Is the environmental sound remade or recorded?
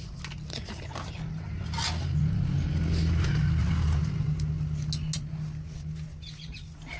recorded